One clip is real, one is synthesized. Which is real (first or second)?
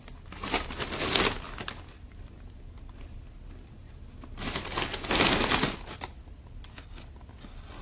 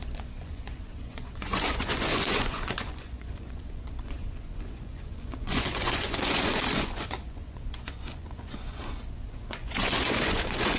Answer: first